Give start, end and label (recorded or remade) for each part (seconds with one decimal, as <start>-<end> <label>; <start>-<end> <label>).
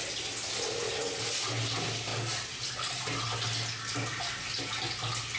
0.0-5.4 recorded